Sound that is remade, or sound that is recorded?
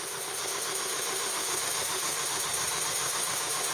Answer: remade